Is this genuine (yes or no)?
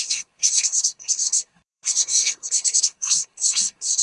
no